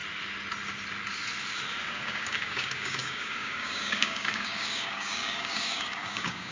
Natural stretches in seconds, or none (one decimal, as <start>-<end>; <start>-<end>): 0.0-1.8